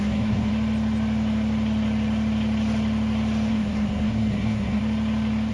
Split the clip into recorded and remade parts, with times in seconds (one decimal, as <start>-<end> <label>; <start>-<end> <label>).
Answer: 0.0-0.5 remade; 0.5-3.5 recorded; 3.5-4.8 remade; 4.8-5.5 recorded